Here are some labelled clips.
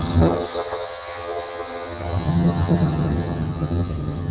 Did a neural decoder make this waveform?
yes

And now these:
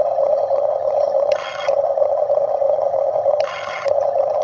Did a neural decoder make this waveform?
yes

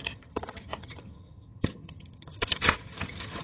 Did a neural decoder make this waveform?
yes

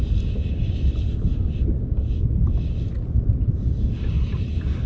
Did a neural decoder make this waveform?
no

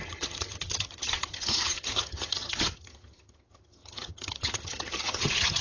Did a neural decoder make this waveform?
yes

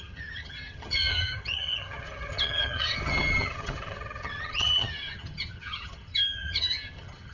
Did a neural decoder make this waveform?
yes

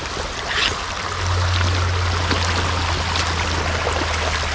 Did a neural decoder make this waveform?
no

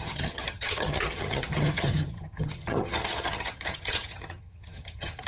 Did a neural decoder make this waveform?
yes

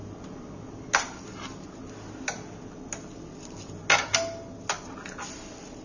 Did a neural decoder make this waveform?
no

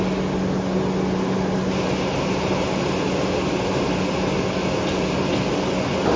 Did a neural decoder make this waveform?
no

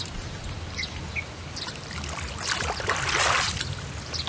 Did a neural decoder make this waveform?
no